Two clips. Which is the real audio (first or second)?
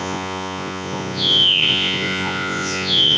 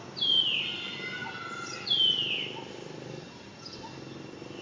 second